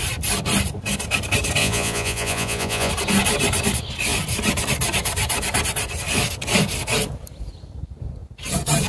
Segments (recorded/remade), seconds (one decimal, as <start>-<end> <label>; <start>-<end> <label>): 0.0-1.6 recorded; 1.6-2.9 remade; 2.9-8.9 recorded